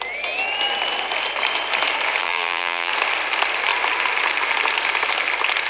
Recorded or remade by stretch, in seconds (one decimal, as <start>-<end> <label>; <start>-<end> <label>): 0.0-2.2 recorded; 2.2-2.9 remade; 2.9-5.7 recorded